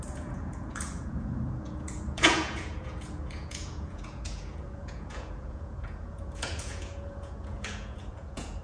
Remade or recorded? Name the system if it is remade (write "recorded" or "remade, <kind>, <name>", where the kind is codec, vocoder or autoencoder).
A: remade, vocoder, Vocos